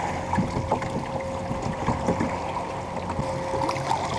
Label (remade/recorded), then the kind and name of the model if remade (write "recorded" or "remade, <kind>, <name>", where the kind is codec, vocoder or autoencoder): recorded